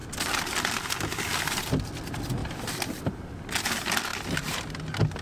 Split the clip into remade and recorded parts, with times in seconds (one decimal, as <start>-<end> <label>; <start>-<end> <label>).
0.0-2.4 recorded; 2.4-3.0 remade; 3.0-4.1 recorded; 4.1-4.7 remade; 4.7-5.2 recorded